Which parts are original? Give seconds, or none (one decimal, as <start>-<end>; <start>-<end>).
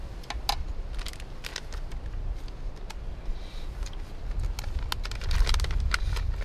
0.0-6.4